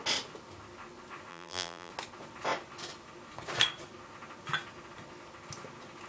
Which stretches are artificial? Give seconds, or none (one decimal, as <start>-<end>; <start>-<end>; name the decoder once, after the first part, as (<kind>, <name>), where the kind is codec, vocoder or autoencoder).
1.3-1.9 (vocoder, BigVGAN v2)